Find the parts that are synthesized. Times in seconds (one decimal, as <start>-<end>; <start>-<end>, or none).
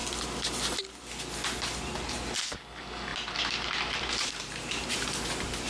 3.1-5.7